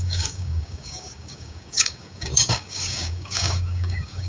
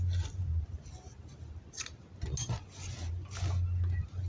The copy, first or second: first